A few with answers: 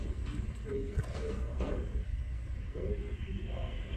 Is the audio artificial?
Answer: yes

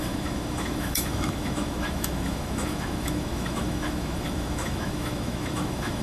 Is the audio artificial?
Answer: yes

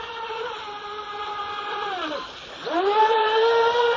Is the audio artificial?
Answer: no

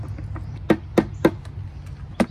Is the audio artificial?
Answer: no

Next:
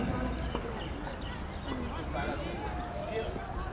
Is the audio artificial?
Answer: no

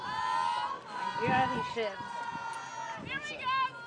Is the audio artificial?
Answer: no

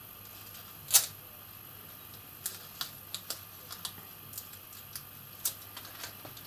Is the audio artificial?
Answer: no